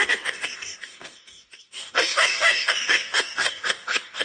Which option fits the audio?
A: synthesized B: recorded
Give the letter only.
A